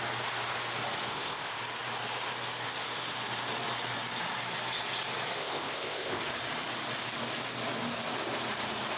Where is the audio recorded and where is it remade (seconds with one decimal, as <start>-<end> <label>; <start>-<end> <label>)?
0.0-1.1 recorded; 1.1-1.6 remade; 1.6-5.4 recorded; 5.4-6.2 remade; 6.2-9.0 recorded